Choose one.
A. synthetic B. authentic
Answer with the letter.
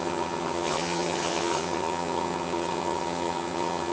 A